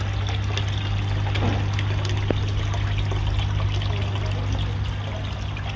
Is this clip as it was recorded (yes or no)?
yes